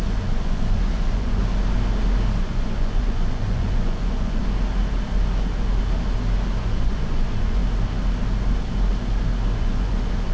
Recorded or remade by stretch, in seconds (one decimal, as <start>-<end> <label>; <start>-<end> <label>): 0.0-1.4 remade; 1.4-2.4 recorded; 2.4-4.4 remade; 4.4-6.6 recorded; 6.6-7.6 remade; 7.6-9.6 recorded; 9.6-10.3 remade